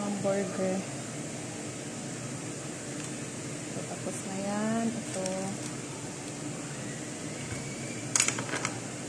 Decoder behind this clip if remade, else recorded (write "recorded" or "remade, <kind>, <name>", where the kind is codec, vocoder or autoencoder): recorded